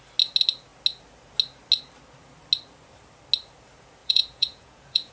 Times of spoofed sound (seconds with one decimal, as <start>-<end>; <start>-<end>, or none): 4.0-5.1